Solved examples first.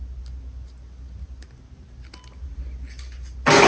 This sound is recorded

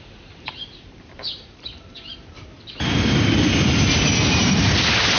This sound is remade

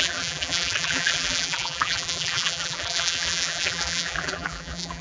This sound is remade